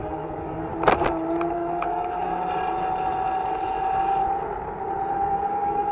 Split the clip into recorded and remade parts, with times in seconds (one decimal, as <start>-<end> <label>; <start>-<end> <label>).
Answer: 0.0-0.7 remade; 0.7-1.5 recorded; 1.5-2.3 remade; 2.3-5.1 recorded; 5.1-5.9 remade